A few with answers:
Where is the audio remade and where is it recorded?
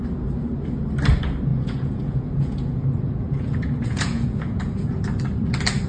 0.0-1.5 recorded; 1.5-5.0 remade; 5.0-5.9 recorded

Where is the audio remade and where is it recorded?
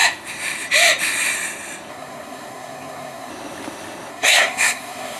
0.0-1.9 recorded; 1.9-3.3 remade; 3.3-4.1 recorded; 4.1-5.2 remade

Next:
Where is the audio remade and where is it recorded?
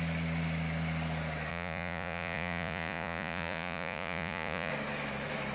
0.0-1.5 recorded; 1.5-4.7 remade; 4.7-5.5 recorded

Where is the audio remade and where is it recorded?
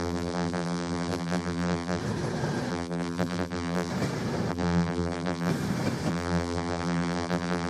0.0-2.0 remade; 2.0-2.7 recorded; 2.7-3.9 remade; 3.9-4.5 recorded; 4.5-5.5 remade; 5.5-6.1 recorded; 6.1-7.7 remade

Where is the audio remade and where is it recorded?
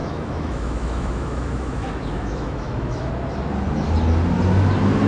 0.0-3.1 remade; 3.1-5.1 recorded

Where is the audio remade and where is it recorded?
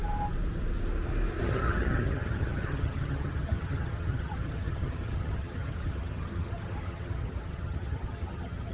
0.0-1.4 recorded; 1.4-8.7 remade